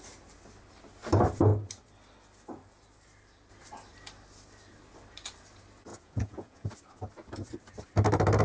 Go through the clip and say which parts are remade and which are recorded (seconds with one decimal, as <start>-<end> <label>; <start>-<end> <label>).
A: 0.0-5.9 recorded; 5.9-6.7 remade; 6.7-8.4 recorded